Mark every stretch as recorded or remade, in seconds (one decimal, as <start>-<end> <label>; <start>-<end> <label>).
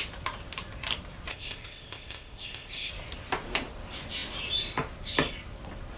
0.0-1.3 recorded; 1.3-2.9 remade; 2.9-6.0 recorded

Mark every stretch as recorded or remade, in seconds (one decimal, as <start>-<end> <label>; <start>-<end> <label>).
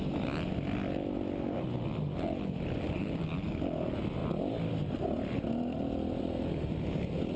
0.0-7.4 recorded